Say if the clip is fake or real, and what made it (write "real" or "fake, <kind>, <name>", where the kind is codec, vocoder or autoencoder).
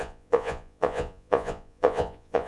fake, vocoder, Vocos